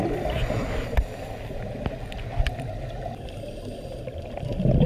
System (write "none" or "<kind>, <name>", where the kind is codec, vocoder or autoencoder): none